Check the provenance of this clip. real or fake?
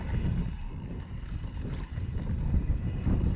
real